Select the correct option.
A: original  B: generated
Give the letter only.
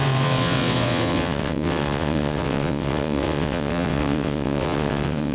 B